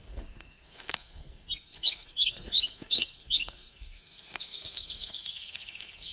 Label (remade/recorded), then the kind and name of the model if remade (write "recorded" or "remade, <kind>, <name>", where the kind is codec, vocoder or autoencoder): remade, codec, SNAC